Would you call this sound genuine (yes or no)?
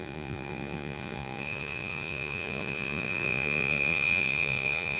no